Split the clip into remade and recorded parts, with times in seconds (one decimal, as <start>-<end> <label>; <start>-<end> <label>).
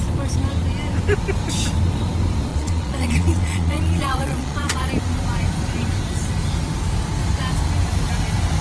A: 0.0-2.5 recorded; 2.5-4.9 remade; 4.9-8.6 recorded